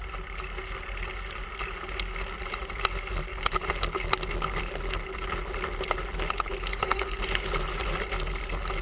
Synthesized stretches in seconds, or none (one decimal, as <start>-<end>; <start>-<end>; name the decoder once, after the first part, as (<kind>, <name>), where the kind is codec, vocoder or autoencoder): 6.7-7.2 (codec, SNAC)